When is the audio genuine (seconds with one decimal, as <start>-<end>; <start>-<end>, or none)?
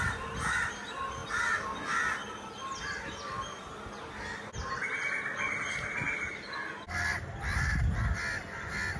0.0-9.0